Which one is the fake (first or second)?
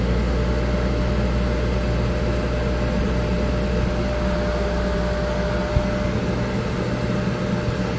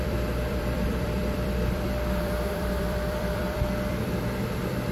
second